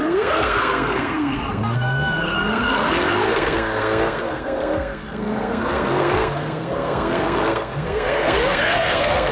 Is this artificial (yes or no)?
yes